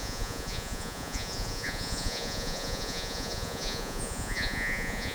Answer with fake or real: fake